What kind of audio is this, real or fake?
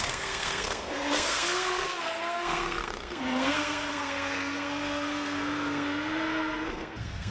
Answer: fake